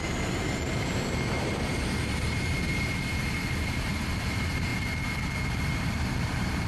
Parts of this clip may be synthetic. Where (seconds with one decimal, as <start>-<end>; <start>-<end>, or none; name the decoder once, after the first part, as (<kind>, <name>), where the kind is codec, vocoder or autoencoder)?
0.0-4.7 (vocoder, BigVGAN v2); 5.5-6.7